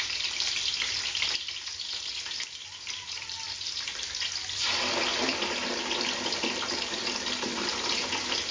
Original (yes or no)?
no